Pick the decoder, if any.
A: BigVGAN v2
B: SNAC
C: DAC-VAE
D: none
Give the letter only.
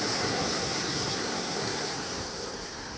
B